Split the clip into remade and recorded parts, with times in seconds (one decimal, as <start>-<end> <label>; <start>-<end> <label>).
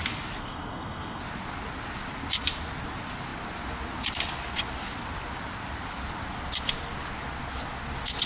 0.0-0.4 recorded; 0.4-1.2 remade; 1.2-8.3 recorded